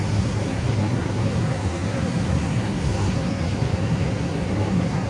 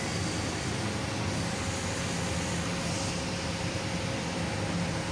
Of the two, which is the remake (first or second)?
first